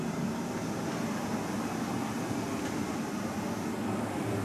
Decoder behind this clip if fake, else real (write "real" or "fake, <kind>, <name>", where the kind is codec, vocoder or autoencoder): real